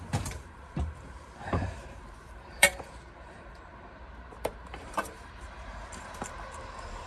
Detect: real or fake fake